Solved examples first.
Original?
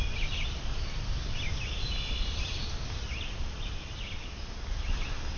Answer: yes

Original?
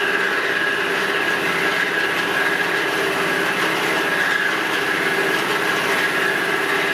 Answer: yes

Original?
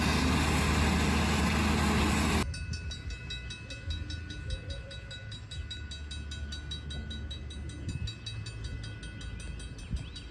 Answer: yes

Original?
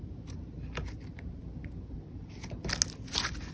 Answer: yes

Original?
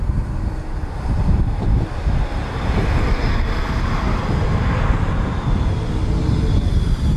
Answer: yes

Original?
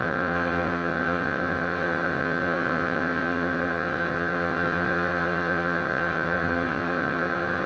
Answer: no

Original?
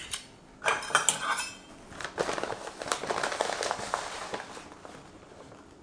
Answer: yes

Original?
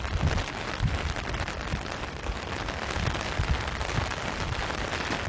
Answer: yes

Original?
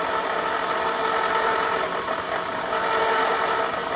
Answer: yes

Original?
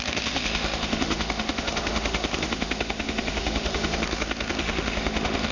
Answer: no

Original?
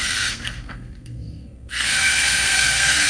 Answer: no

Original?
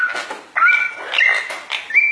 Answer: yes